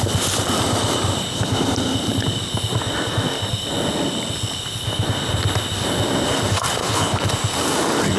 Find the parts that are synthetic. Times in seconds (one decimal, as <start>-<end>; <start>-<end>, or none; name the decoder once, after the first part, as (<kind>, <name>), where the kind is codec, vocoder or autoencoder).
6.8-7.3 (codec, HILCodec)